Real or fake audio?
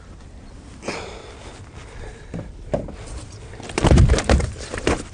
real